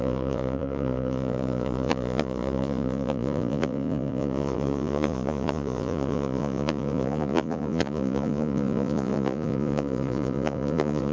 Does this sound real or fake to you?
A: fake